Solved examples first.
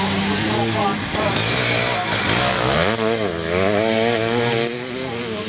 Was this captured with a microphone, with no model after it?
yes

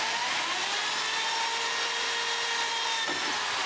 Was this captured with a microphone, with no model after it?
yes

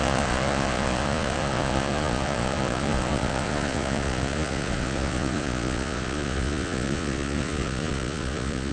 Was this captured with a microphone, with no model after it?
no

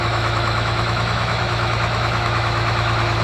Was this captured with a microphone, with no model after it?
no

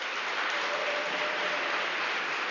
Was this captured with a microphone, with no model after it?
yes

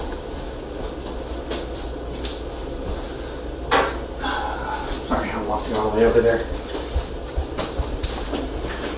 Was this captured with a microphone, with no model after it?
yes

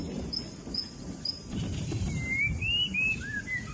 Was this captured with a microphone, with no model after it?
yes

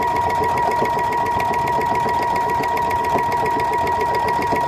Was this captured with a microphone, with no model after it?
yes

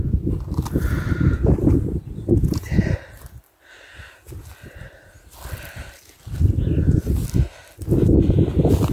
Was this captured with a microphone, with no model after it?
yes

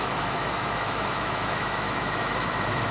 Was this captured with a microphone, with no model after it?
no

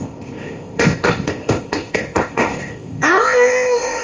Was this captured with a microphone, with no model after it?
no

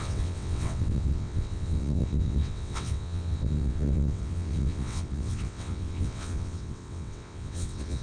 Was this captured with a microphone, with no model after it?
no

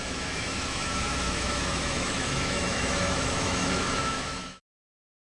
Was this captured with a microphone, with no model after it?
no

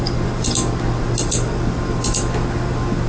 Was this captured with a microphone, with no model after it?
yes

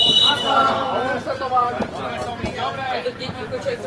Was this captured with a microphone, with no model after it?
no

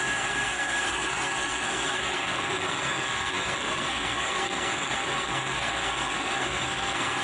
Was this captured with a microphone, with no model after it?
no